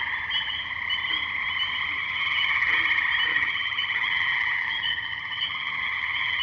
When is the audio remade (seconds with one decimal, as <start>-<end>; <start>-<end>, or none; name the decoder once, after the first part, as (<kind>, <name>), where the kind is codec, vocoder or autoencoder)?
2.0-2.8 (vocoder, HiFi-GAN); 3.3-6.4